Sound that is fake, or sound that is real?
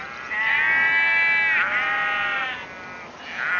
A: real